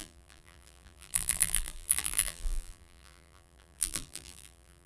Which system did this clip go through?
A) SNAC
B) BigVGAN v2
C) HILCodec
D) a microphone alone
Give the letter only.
B